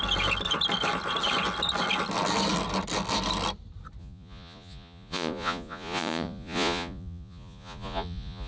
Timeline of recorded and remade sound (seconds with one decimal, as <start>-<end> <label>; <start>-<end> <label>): 0.0-4.0 recorded; 4.0-8.5 remade